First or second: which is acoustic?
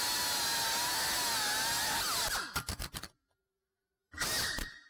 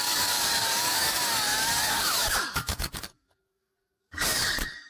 first